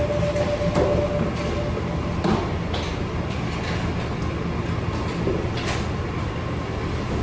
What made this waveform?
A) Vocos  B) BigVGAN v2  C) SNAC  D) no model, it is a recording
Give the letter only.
D